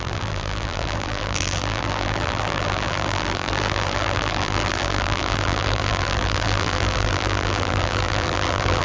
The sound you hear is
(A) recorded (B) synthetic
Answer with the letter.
B